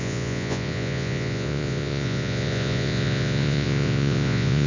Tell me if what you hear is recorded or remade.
remade